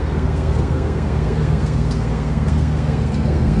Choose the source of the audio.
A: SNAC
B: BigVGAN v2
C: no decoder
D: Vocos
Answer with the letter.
A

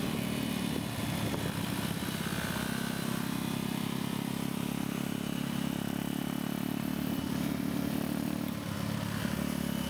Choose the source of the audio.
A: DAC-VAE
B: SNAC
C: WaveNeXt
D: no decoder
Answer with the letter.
D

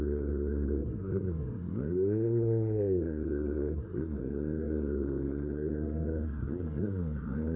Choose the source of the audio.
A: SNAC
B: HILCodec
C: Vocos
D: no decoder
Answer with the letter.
A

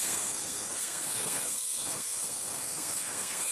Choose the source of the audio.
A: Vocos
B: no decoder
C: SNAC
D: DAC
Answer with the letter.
C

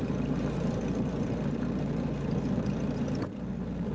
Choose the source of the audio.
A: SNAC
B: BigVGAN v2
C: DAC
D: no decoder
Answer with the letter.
D